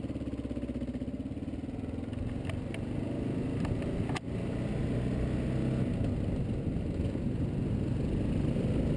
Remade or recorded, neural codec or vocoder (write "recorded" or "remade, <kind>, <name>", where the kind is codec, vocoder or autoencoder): recorded